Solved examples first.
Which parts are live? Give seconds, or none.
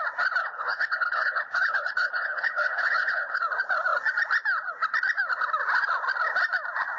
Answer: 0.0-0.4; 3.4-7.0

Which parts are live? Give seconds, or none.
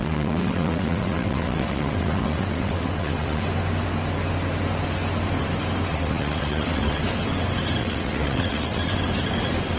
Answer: 3.4-5.9; 7.0-7.8; 9.0-9.8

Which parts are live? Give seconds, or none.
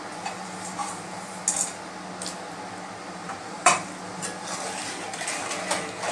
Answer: 0.0-0.8; 1.4-3.2; 3.9-6.1